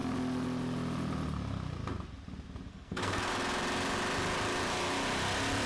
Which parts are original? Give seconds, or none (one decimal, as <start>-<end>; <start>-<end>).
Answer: 0.0-2.7; 3.3-5.7